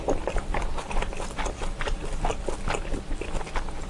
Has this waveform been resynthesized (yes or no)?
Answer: no